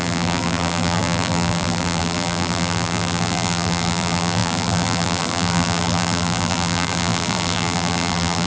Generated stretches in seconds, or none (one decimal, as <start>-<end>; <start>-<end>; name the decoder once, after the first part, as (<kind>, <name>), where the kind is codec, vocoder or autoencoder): 0.0-8.5 (vocoder, BigVGAN v2)